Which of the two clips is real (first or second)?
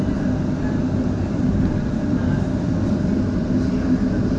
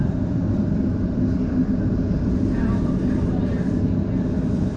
first